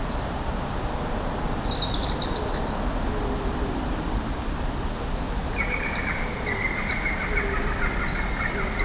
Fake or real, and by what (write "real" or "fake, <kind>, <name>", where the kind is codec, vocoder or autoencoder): real